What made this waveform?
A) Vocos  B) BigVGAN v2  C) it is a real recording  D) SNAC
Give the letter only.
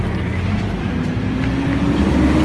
C